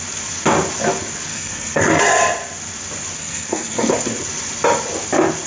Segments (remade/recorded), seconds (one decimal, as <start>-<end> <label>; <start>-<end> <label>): 0.0-1.3 recorded; 1.3-2.0 remade; 2.0-3.2 recorded; 3.2-3.9 remade; 3.9-5.5 recorded